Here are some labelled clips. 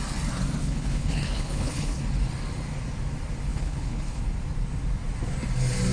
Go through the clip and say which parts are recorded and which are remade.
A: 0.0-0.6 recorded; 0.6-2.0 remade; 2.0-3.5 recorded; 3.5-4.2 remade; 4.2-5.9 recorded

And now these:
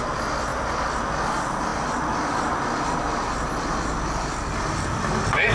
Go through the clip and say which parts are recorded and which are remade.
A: 0.0-0.5 recorded; 0.5-1.1 remade; 1.1-5.5 recorded

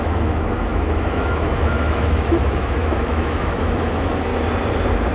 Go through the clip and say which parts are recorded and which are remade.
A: 0.0-4.3 remade; 4.3-5.1 recorded

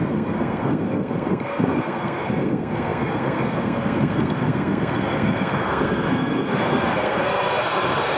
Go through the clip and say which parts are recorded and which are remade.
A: 0.0-8.2 remade

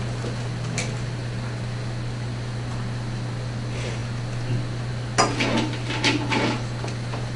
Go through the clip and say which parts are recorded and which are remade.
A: 0.0-7.4 recorded